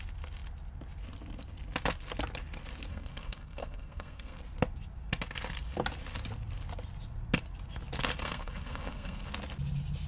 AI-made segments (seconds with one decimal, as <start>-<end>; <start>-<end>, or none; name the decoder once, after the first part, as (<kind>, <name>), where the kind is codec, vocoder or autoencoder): 2.9-4.4 (codec, SNAC); 8.2-9.3